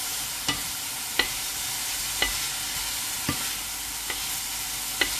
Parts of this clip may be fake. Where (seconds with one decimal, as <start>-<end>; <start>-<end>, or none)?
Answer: 0.0-2.0